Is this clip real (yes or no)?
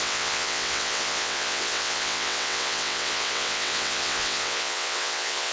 no